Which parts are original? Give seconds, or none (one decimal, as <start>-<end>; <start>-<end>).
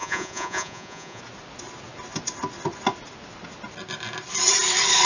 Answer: 1.2-5.1